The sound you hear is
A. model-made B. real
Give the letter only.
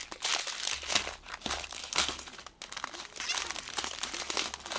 B